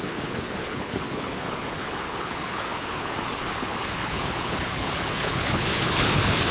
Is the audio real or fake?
fake